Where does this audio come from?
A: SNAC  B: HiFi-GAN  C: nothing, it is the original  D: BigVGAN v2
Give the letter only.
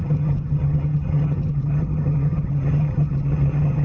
B